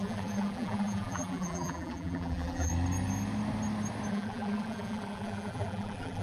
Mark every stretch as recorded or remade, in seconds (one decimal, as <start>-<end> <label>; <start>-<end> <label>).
0.0-2.7 remade; 2.7-4.1 recorded; 4.1-6.2 remade